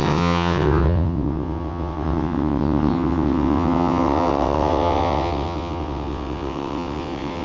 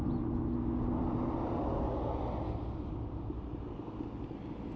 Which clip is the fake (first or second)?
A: first